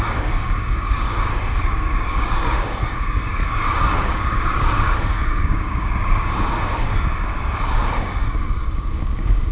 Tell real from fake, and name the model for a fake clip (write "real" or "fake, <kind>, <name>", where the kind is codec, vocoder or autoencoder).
fake, codec, DAC